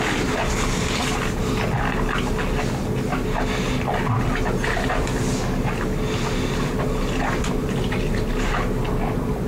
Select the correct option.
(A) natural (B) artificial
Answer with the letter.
A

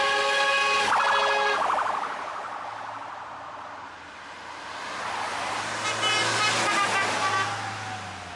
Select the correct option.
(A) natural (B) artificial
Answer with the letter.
A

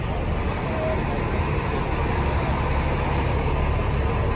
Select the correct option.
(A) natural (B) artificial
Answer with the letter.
A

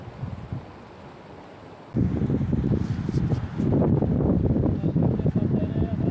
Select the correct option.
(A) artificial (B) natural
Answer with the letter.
B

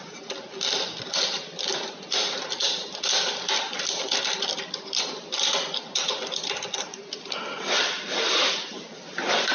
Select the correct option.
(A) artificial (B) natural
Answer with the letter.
B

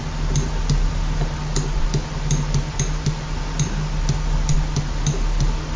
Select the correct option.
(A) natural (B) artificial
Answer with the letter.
A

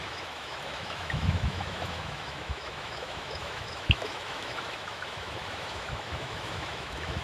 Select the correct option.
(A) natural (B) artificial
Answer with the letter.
B